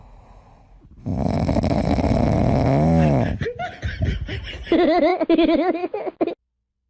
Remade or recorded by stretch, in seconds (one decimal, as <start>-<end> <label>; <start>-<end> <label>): 0.0-6.9 recorded